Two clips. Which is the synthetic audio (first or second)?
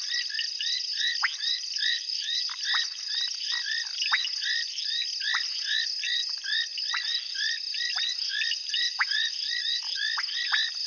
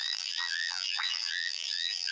second